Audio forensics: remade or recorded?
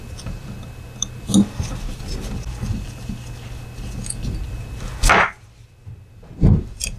recorded